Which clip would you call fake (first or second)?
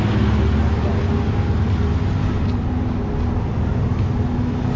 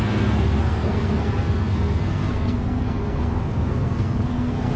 second